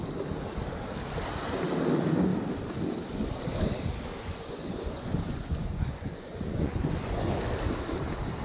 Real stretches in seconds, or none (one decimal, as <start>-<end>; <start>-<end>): 0.0-4.1; 7.4-8.4